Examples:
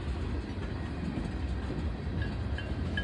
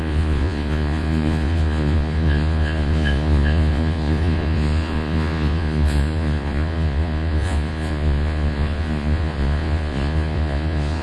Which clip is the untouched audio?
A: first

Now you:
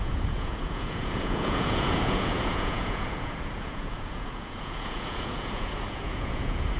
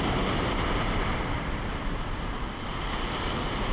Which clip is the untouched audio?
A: second